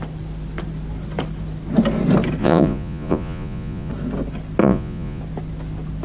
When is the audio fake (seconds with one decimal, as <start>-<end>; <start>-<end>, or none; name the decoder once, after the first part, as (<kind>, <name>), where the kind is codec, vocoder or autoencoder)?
2.4-3.9 (vocoder, Vocos); 4.6-5.2